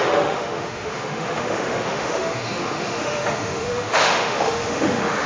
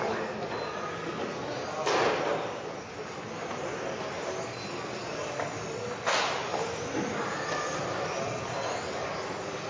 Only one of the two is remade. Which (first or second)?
first